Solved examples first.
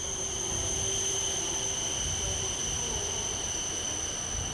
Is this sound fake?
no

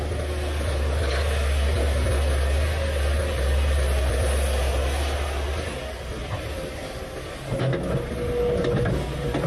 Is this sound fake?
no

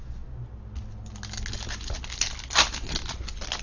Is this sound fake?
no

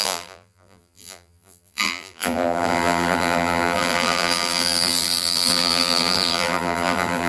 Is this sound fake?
yes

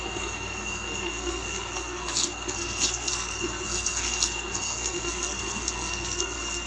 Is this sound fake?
yes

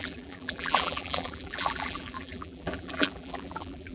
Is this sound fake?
yes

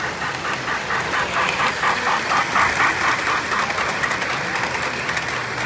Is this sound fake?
no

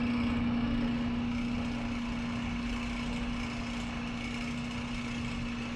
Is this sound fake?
no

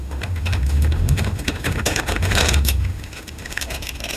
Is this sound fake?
yes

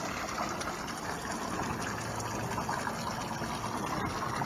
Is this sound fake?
no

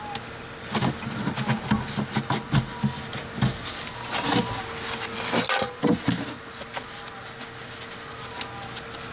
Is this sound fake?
no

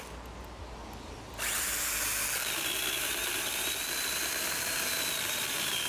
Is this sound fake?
no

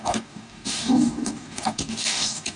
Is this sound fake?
yes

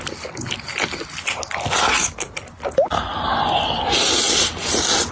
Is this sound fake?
no